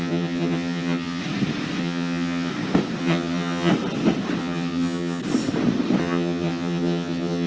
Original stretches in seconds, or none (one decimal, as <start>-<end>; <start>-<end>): 1.2-1.8; 2.5-3.0; 3.7-4.4; 5.2-6.0

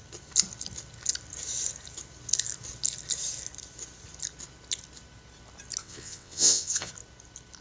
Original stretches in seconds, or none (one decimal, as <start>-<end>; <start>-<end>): 0.0-5.8; 6.9-7.6

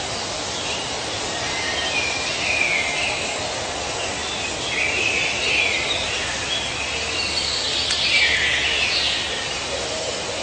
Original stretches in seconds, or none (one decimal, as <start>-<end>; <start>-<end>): 0.0-10.4

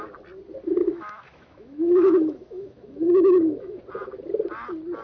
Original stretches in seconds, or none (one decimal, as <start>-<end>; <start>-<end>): 0.0-0.8; 3.8-5.0

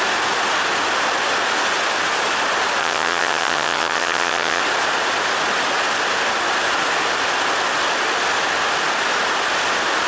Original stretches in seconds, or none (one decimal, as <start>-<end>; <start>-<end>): 0.0-2.8; 4.6-10.1